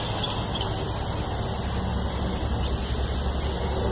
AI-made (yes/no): no